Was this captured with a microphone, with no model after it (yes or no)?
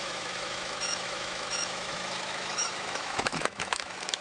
no